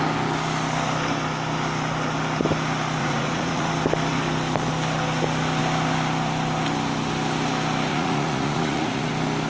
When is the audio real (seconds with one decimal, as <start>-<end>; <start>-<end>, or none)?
0.0-3.0; 3.7-7.9; 9.1-9.5